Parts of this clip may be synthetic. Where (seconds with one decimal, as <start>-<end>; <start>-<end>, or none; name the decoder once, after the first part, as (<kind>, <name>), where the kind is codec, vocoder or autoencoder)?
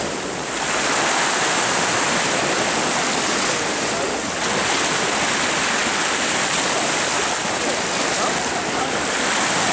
none